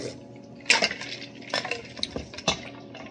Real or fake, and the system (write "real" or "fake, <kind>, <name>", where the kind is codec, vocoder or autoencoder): real